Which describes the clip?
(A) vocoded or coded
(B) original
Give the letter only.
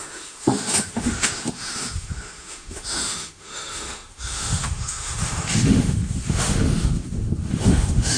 A